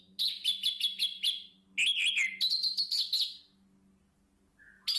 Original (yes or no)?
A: yes